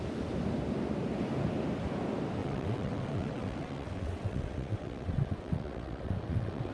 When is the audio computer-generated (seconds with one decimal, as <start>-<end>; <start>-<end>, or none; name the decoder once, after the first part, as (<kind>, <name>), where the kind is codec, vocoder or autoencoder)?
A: 2.4-6.7 (vocoder, WaveNeXt)